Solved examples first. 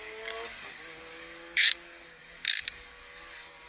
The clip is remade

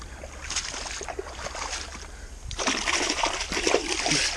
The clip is recorded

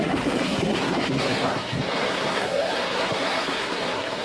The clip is remade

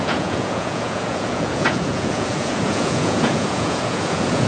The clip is remade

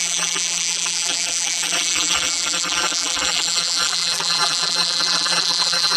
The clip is remade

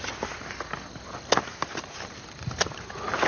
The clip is recorded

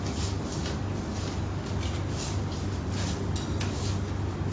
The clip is recorded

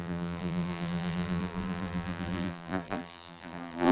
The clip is remade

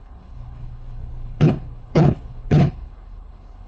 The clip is remade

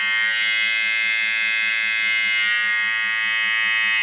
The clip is recorded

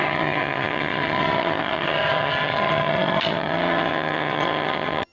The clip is remade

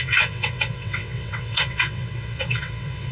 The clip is remade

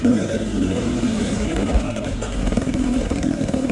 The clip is remade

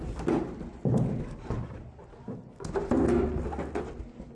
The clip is recorded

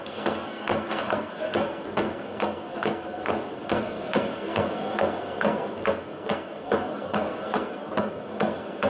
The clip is remade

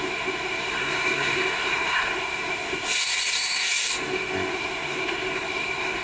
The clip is remade